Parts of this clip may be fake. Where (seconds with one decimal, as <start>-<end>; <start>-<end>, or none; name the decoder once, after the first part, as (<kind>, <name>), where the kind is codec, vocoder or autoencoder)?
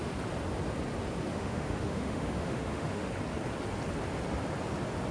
1.3-3.1 (autoencoder, DAC-VAE)